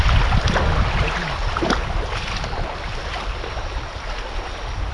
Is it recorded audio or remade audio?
recorded